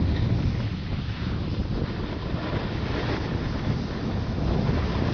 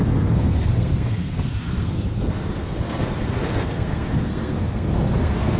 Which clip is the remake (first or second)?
second